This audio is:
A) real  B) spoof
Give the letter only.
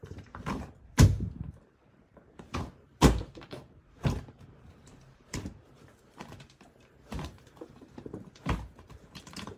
B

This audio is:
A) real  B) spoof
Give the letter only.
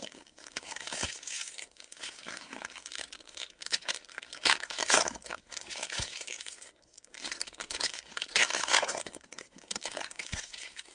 B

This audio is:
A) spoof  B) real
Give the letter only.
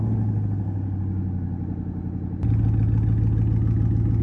B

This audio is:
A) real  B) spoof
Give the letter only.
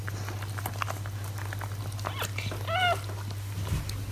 A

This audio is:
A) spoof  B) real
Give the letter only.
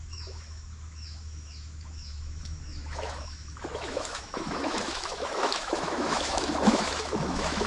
A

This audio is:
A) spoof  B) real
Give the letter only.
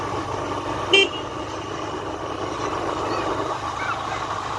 B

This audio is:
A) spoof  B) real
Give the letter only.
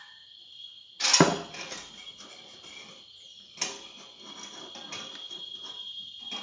B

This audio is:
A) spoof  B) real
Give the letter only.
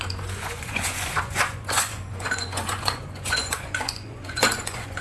A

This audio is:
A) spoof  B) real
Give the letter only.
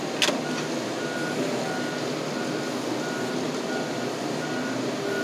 B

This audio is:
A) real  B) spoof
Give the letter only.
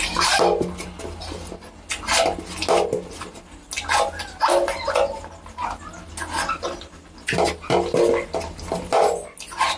A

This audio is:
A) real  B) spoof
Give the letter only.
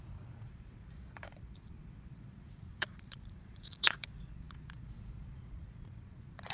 B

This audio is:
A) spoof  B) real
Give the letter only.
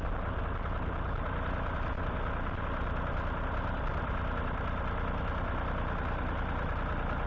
B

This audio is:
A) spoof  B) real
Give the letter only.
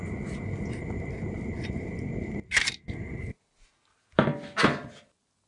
B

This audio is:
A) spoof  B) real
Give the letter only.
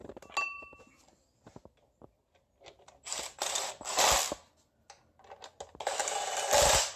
B